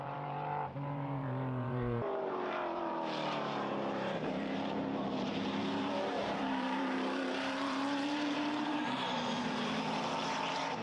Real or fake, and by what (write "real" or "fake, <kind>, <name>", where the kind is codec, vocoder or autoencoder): fake, vocoder, BigVGAN v2